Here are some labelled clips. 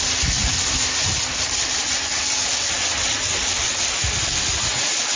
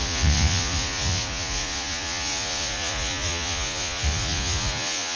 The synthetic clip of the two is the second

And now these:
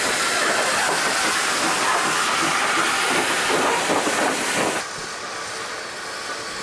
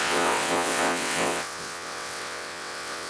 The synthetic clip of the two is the second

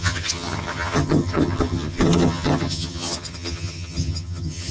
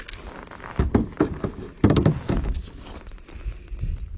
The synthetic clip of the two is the first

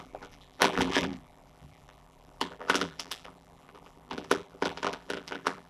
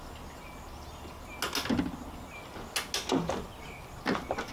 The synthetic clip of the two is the first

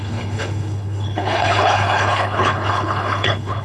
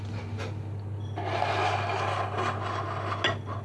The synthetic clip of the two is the first